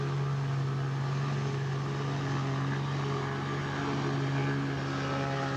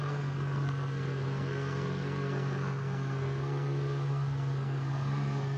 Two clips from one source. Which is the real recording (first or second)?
first